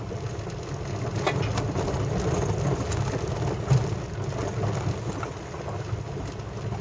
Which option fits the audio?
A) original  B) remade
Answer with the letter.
A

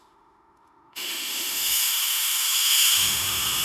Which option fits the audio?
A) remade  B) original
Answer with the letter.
A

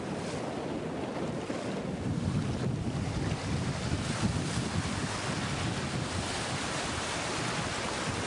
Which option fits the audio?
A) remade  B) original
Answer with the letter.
B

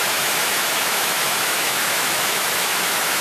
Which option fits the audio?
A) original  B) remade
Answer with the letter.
B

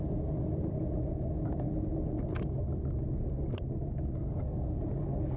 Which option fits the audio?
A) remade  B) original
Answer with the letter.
B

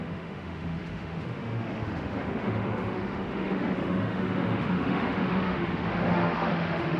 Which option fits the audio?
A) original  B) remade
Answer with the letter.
B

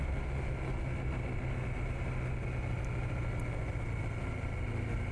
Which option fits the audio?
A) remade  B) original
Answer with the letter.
B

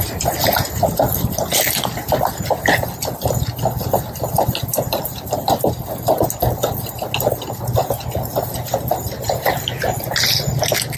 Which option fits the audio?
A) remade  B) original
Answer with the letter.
B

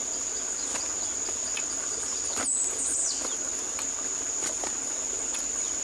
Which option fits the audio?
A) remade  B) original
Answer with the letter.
B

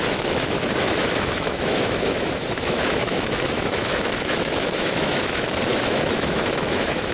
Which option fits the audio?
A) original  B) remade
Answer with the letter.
B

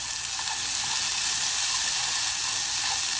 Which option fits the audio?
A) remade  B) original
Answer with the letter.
B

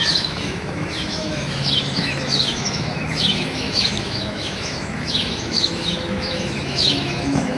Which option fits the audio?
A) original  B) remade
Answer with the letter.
B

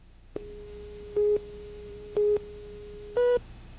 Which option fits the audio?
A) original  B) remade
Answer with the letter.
B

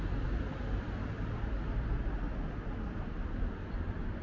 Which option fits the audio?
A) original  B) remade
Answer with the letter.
A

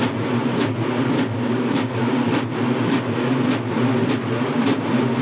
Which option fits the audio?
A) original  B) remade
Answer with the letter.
A